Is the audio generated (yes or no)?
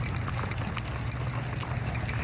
no